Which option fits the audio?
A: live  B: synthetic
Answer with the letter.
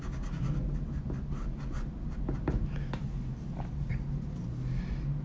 A